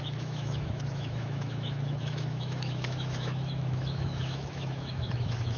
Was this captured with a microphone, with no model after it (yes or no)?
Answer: no